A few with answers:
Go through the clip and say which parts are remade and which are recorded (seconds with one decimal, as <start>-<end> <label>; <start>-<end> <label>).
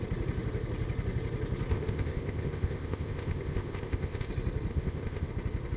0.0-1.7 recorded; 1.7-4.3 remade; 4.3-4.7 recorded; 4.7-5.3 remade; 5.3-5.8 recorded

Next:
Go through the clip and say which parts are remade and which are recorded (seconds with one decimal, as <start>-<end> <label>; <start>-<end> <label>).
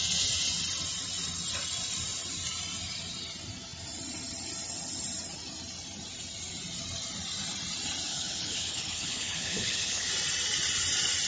0.0-8.1 recorded; 8.1-10.1 remade; 10.1-11.3 recorded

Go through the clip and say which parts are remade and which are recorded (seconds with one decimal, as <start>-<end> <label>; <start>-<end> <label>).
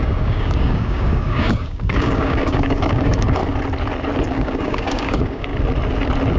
0.0-3.4 remade; 3.4-4.3 recorded; 4.3-5.5 remade; 5.5-6.4 recorded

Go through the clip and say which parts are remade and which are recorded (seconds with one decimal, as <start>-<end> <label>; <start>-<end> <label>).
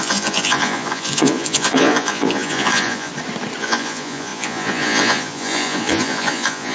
0.0-3.1 remade; 3.1-3.6 recorded; 3.6-6.7 remade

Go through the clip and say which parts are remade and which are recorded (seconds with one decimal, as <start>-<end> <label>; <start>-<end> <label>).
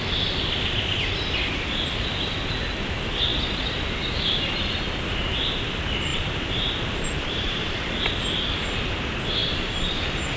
0.0-6.1 recorded; 6.1-8.1 remade; 8.1-9.4 recorded; 9.4-10.0 remade; 10.0-10.4 recorded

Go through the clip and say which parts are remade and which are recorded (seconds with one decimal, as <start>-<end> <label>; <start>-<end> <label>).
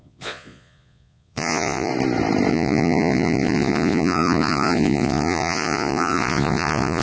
0.0-1.9 remade; 1.9-2.5 recorded; 2.5-7.0 remade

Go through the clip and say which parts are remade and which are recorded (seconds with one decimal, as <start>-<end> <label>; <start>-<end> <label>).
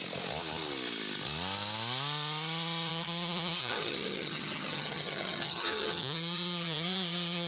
0.0-2.9 recorded; 2.9-7.5 remade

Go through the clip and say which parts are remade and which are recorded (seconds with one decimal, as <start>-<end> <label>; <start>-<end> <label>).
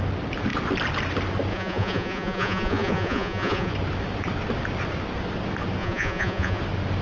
0.0-1.5 recorded; 1.5-3.7 remade; 3.7-5.8 recorded; 5.8-6.6 remade; 6.6-7.0 recorded